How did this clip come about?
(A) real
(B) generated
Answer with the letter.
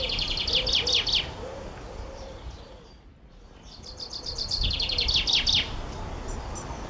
A